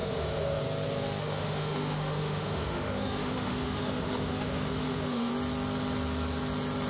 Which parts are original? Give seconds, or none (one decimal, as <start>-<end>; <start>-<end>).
0.6-1.2; 5.3-6.9